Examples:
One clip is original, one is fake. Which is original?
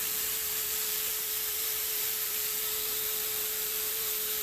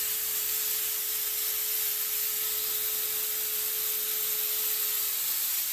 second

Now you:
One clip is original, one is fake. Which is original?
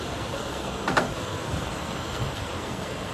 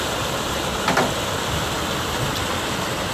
second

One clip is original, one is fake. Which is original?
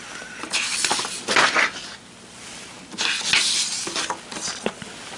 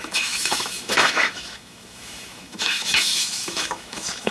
first